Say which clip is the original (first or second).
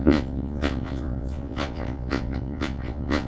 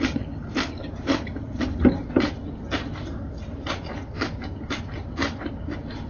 second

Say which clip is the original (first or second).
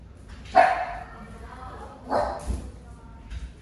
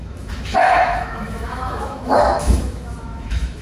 first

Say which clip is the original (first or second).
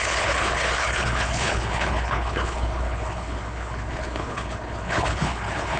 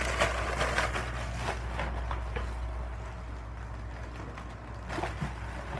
second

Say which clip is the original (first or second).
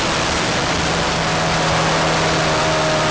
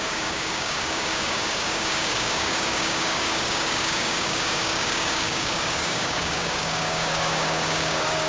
first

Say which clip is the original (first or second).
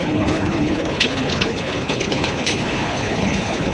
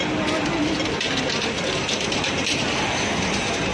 second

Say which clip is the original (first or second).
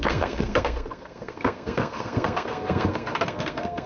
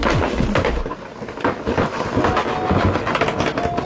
second